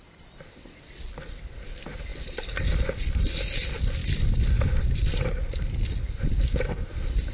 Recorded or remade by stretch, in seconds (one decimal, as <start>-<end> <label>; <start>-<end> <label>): 0.0-7.3 recorded